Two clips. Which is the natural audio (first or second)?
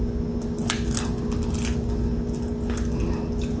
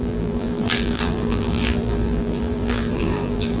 first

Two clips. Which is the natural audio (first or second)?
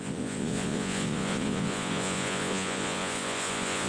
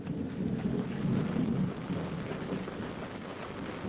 second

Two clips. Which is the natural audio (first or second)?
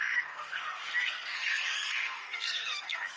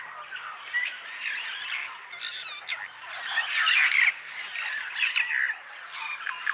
second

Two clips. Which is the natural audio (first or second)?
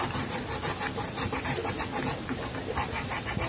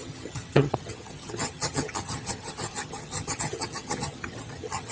first